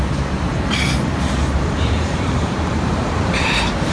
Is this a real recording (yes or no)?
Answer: no